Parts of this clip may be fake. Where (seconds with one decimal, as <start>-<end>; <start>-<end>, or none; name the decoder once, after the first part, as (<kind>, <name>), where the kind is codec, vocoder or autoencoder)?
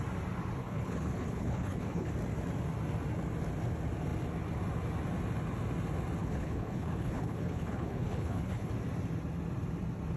0.6-2.1 (codec, HILCodec); 6.2-8.7